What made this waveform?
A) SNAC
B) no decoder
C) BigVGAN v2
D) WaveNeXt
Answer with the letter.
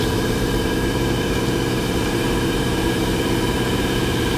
C